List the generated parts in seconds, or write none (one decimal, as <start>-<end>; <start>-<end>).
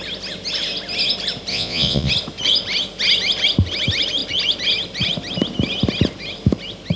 1.5-2.1